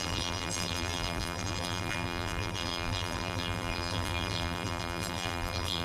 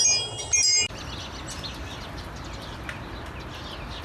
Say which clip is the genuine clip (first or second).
second